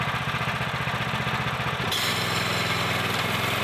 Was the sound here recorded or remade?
recorded